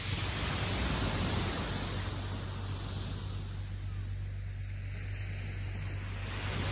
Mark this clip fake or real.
real